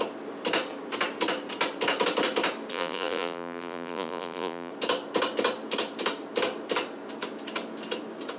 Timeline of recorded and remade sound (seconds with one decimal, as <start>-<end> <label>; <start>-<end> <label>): 0.0-2.7 recorded; 2.7-4.7 remade; 4.7-8.4 recorded